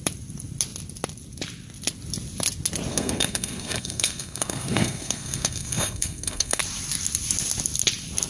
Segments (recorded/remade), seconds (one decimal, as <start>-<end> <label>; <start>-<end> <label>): 0.0-2.9 recorded; 2.9-6.6 remade; 6.6-8.3 recorded

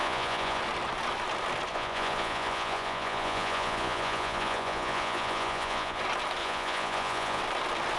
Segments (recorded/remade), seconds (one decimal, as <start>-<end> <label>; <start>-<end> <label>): 0.0-0.6 remade; 0.6-1.7 recorded; 1.7-6.0 remade; 6.0-6.4 recorded; 6.4-7.4 remade; 7.4-8.0 recorded

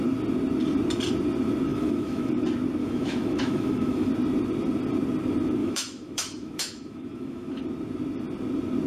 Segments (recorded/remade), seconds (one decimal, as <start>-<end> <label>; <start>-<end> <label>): 0.0-1.7 recorded; 1.7-2.3 remade; 2.3-2.8 recorded; 2.8-4.1 remade; 4.1-5.6 recorded; 5.6-7.6 remade; 7.6-8.9 recorded

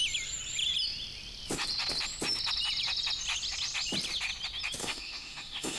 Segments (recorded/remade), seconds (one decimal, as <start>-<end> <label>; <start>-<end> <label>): 0.0-4.8 recorded; 4.8-5.8 remade

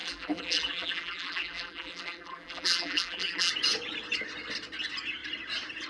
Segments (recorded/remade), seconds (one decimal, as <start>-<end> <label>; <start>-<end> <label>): 0.0-3.5 remade; 3.5-5.9 recorded

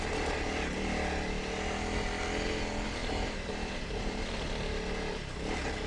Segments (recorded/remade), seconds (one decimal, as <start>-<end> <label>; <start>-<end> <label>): 0.0-3.0 recorded; 3.0-4.5 remade; 4.5-5.9 recorded

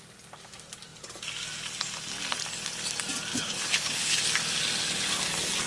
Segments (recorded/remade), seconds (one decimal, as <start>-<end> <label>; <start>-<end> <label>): 0.0-3.3 recorded; 3.3-4.2 remade; 4.2-5.7 recorded

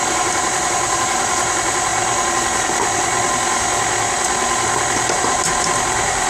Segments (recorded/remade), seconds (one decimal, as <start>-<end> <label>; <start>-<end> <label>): 0.0-1.9 remade; 1.9-5.0 recorded; 5.0-6.3 remade